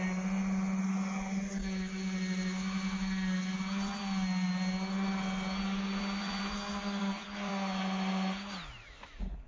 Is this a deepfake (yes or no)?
no